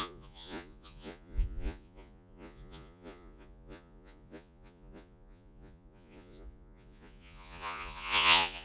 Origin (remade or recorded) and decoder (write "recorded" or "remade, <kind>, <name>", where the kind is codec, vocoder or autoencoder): remade, vocoder, Vocos